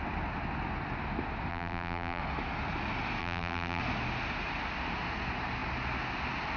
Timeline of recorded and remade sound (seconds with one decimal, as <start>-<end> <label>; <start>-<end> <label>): 0.0-1.5 recorded; 1.5-2.2 remade; 2.2-3.2 recorded; 3.2-3.8 remade; 3.8-6.6 recorded